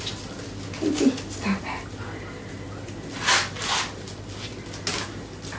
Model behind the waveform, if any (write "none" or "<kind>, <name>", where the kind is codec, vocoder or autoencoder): none